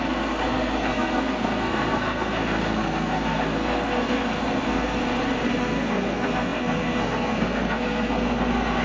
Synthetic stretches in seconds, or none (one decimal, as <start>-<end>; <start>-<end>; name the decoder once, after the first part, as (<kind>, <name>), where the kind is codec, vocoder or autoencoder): 0.0-5.0 (codec, SNAC); 5.5-8.8